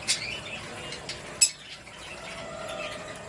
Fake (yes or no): no